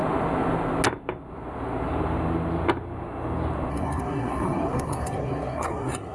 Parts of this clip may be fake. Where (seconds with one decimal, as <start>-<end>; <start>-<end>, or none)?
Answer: 3.7-6.1